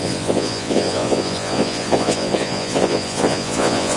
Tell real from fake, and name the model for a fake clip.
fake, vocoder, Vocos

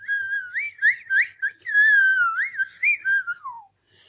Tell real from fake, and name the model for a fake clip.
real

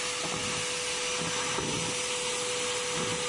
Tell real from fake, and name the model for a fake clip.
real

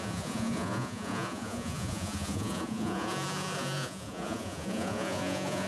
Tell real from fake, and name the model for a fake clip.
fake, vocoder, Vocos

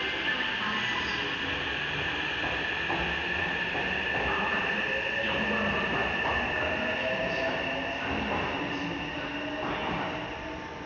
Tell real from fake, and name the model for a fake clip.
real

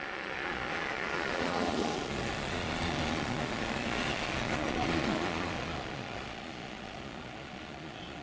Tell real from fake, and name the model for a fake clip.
fake, vocoder, Vocos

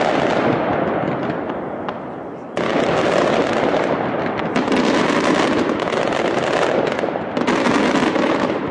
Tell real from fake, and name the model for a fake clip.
real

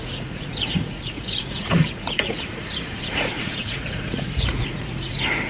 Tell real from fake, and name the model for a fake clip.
fake, vocoder, Vocos